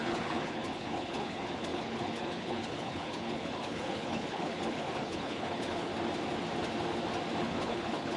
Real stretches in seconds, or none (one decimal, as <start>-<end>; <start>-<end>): 5.9-7.4